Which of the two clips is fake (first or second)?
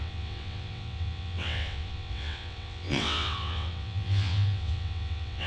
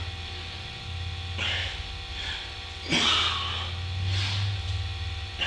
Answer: first